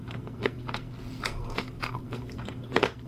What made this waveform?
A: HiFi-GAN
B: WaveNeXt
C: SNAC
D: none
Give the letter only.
C